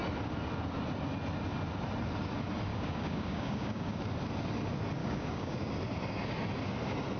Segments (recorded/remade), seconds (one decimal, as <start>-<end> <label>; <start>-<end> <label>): 0.0-2.7 recorded; 2.7-4.0 remade; 4.0-5.0 recorded; 5.0-5.7 remade; 5.7-7.2 recorded